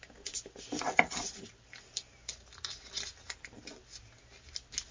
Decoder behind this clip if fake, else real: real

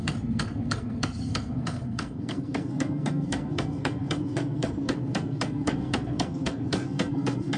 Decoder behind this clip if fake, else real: fake, codec, SNAC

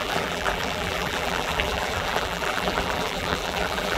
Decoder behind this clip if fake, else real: fake, vocoder, BigVGAN v2